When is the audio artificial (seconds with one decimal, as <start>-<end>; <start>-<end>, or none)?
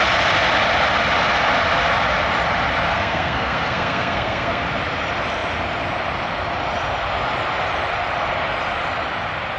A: 2.9-4.6